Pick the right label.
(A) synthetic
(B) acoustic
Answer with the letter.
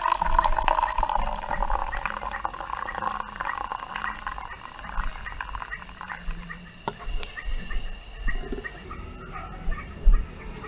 B